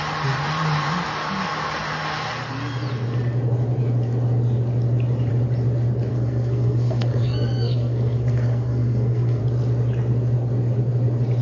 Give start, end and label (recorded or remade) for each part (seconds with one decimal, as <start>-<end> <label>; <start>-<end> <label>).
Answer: 0.0-6.1 recorded; 6.1-9.4 remade; 9.4-11.4 recorded